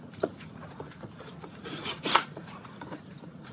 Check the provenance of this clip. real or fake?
fake